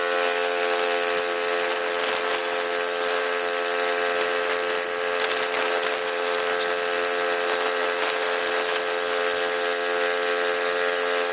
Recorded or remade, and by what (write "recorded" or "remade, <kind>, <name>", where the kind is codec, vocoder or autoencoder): recorded